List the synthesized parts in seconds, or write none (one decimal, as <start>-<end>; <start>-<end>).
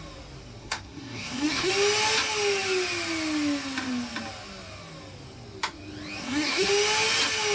0.6-1.7; 6.2-6.7